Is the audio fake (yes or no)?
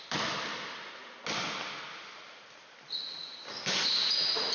no